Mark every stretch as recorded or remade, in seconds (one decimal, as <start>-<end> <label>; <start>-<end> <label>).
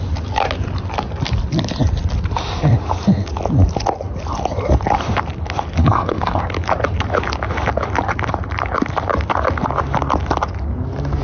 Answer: 0.0-5.8 recorded; 5.8-6.4 remade; 6.4-11.2 recorded